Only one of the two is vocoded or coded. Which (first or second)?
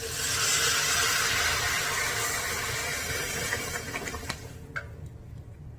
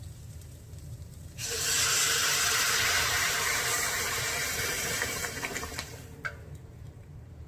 second